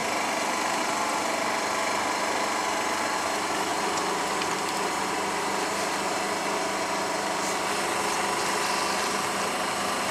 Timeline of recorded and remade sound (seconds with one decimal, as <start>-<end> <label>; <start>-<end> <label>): 0.0-3.7 recorded; 3.7-5.1 remade; 5.1-10.1 recorded